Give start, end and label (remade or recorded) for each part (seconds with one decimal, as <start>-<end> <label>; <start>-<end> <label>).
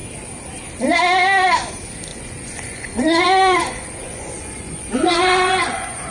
0.0-2.1 recorded; 2.1-6.1 remade